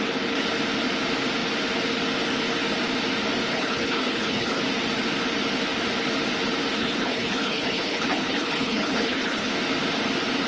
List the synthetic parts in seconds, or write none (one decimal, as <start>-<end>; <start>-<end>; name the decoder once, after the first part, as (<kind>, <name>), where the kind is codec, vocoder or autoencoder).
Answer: 3.5-4.6 (codec, HILCodec); 6.8-9.5